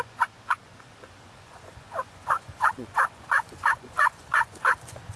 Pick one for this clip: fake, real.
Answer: fake